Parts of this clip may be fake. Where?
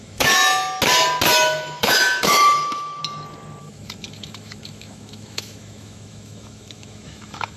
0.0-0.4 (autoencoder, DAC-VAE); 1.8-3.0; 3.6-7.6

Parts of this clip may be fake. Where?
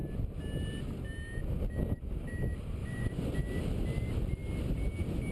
2.8-3.3 (vocoder, Vocos)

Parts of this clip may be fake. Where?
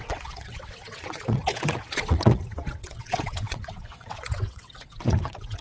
0.0-5.6 (vocoder, WaveNeXt)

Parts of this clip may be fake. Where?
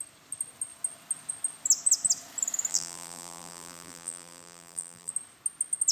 2.7-5.1 (vocoder, BigVGAN v2)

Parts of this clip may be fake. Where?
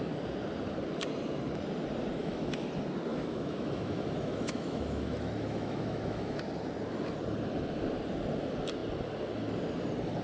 2.2-2.7 (autoencoder, DAC-VAE); 3.1-6.4